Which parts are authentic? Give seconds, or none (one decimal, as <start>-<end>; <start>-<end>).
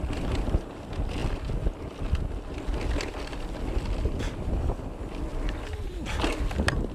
0.0-6.9